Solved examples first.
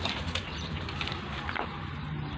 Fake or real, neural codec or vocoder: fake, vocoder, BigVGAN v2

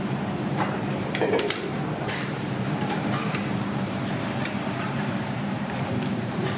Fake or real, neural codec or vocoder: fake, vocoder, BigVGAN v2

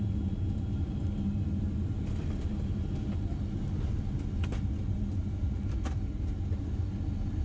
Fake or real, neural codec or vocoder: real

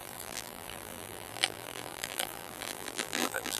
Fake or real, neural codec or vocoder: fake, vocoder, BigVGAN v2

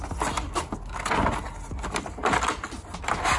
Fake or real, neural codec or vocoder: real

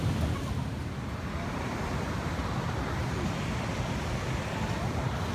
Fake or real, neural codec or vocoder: fake, vocoder, BigVGAN v2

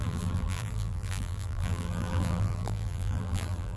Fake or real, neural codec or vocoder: fake, vocoder, BigVGAN v2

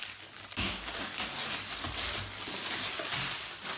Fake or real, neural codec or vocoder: real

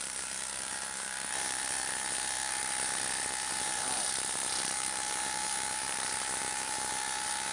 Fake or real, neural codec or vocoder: fake, vocoder, BigVGAN v2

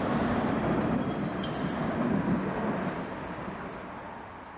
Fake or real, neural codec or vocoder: real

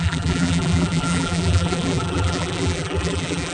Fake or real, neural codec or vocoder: fake, vocoder, BigVGAN v2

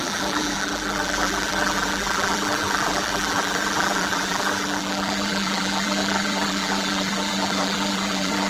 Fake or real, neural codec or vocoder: fake, vocoder, BigVGAN v2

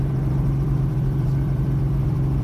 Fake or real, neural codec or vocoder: fake, vocoder, BigVGAN v2